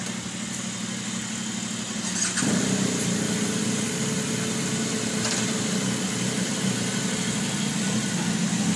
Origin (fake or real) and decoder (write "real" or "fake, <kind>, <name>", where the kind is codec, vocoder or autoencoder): real